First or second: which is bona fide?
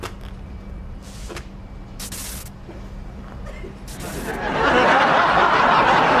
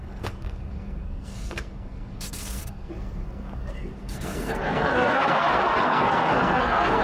first